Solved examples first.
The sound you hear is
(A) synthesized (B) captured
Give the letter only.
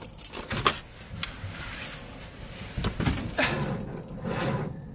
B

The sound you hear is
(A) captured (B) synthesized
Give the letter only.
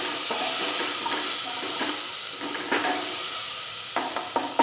A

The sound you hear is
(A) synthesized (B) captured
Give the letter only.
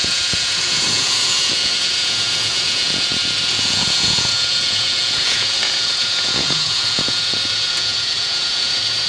A